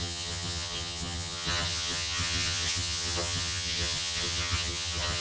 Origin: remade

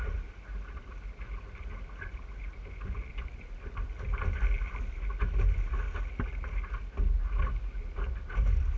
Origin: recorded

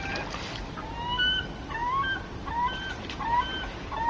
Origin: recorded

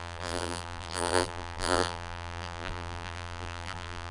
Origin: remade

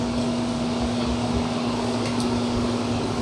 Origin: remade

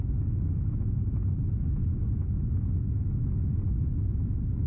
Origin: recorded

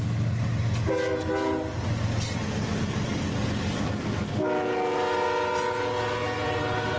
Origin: recorded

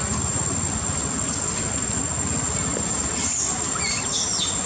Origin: recorded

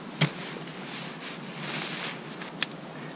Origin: recorded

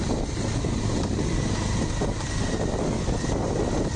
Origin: recorded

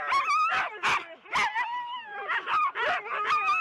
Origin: recorded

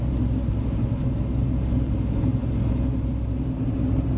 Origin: recorded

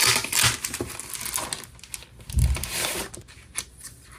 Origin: recorded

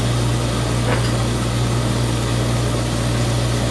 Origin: recorded